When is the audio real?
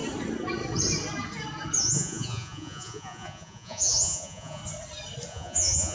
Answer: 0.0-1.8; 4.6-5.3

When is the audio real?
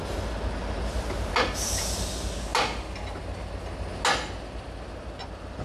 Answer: 0.0-5.6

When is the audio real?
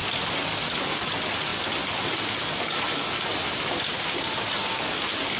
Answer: 0.0-5.4